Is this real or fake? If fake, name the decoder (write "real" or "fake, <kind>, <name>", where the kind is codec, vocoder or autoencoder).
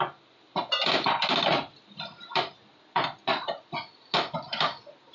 real